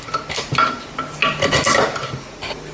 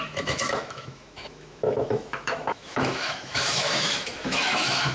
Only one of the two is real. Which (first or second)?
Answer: first